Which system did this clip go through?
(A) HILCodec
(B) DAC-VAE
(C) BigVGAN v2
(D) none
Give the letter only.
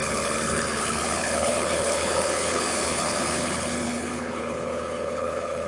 A